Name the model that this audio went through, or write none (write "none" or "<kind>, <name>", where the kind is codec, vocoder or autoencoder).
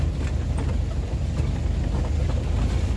none